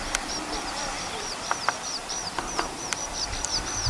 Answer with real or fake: fake